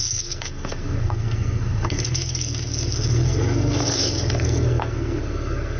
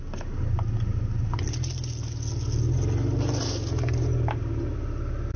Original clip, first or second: second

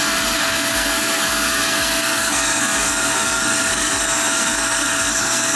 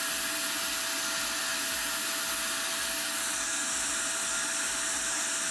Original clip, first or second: second